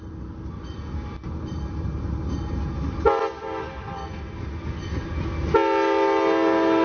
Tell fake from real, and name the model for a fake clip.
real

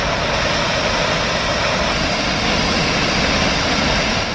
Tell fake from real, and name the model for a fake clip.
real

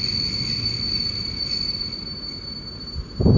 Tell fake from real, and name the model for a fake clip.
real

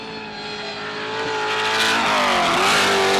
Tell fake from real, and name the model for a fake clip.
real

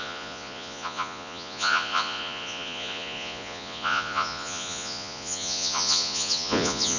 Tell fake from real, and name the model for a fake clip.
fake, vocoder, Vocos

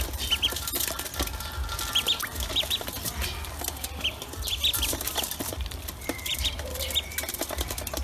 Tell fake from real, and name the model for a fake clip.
fake, vocoder, BigVGAN v2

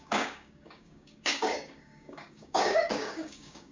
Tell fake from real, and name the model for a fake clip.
fake, codec, DAC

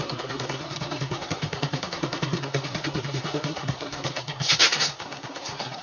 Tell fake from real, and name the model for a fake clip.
fake, codec, SNAC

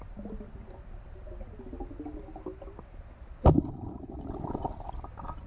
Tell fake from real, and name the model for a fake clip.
real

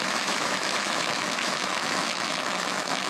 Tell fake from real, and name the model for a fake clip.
fake, autoencoder, DAC-VAE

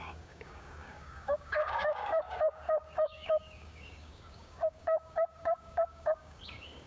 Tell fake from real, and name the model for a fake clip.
fake, codec, DAC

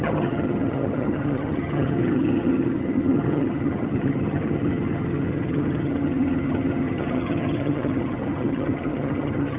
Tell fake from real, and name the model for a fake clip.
fake, vocoder, HiFi-GAN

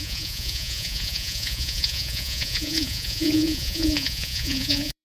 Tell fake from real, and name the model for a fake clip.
fake, vocoder, Vocos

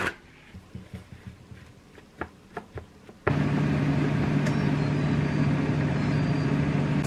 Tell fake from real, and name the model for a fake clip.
real